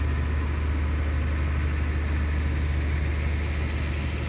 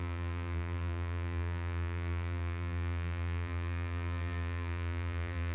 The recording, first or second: first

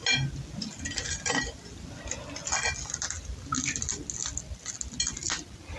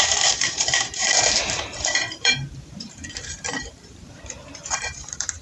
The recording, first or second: first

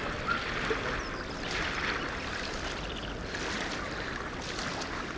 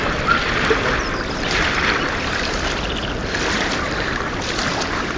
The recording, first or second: first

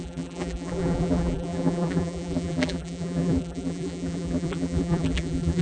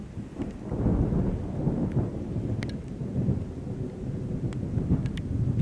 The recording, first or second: second